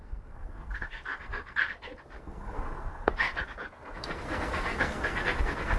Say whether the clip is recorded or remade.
remade